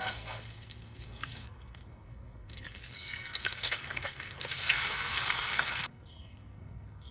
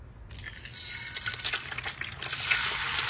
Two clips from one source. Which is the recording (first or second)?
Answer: second